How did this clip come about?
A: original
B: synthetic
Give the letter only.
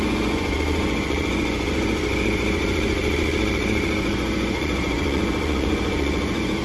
B